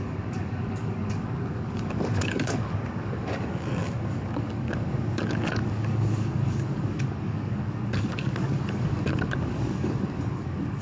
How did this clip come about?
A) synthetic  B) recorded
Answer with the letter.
A